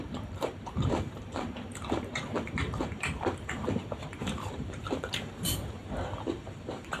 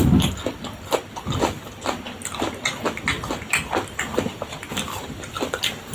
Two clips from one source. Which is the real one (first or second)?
second